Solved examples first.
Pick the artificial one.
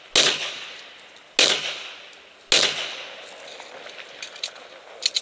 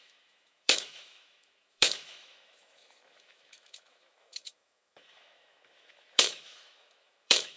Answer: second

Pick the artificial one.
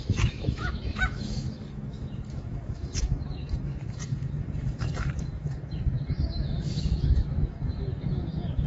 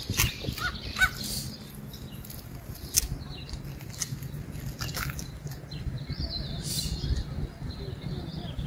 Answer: first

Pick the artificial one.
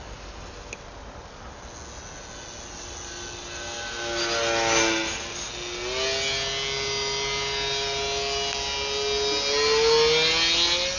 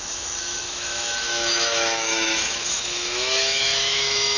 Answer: second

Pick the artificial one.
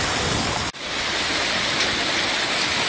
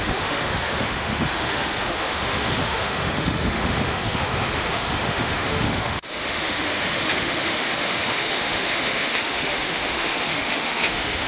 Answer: second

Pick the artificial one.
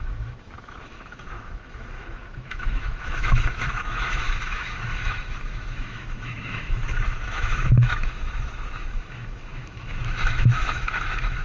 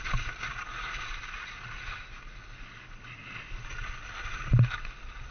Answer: first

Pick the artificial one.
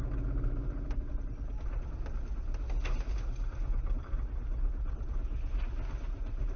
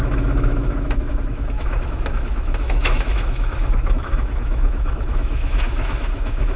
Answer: second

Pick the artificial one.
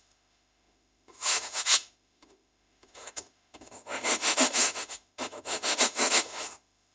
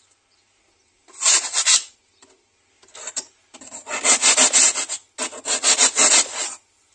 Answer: first